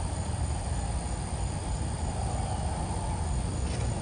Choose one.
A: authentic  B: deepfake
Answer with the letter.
A